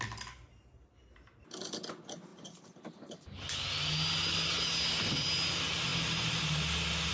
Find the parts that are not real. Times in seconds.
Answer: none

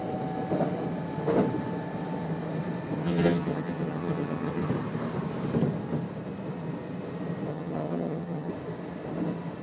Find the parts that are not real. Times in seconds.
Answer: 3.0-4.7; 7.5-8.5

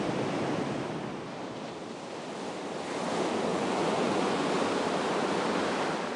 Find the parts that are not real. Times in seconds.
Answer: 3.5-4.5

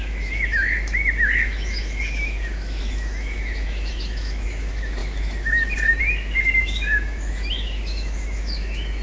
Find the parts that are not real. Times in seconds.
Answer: 0.0-9.0

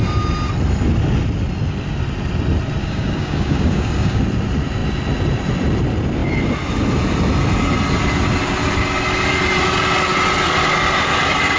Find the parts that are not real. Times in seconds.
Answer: 2.8-4.2

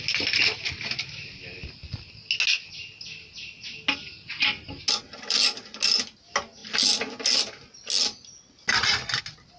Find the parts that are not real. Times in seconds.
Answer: none

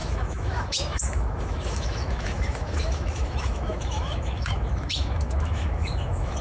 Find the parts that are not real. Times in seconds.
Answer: 0.0-6.4